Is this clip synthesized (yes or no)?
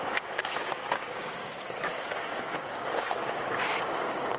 yes